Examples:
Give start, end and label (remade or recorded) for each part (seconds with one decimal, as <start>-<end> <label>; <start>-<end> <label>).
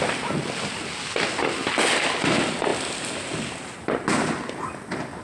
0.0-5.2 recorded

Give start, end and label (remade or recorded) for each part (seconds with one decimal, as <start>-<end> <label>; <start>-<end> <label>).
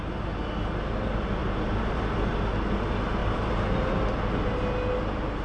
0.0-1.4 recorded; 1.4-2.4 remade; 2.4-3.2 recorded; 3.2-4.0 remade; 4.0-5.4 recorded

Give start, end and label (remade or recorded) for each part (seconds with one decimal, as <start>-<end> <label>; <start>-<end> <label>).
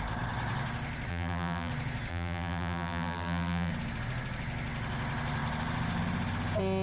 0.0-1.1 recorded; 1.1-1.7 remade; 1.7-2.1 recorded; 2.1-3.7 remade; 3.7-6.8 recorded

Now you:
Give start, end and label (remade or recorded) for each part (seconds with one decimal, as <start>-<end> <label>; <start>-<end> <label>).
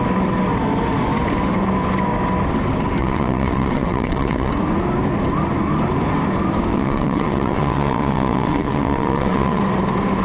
0.0-3.0 recorded; 3.0-4.5 remade; 4.5-6.7 recorded; 6.7-9.6 remade; 9.6-10.2 recorded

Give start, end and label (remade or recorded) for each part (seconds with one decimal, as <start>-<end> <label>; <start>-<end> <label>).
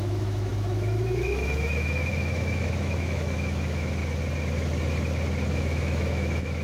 0.0-4.0 remade; 4.0-5.5 recorded; 5.5-6.6 remade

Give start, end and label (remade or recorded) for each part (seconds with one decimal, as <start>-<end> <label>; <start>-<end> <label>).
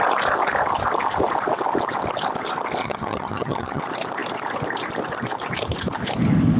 0.0-2.8 recorded; 2.8-3.8 remade; 3.8-6.6 recorded